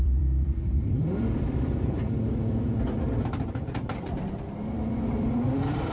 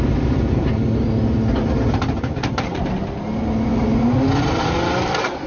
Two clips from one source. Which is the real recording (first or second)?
second